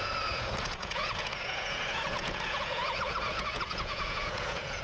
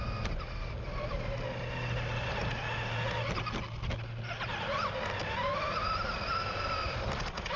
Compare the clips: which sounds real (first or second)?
second